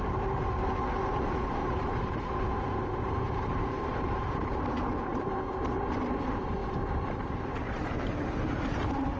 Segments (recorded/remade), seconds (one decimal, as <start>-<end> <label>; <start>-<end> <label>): 0.0-1.6 recorded; 1.6-5.3 remade; 5.3-6.6 recorded; 6.6-8.1 remade; 8.1-9.2 recorded